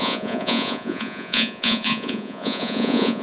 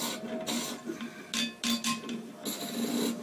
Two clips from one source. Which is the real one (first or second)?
second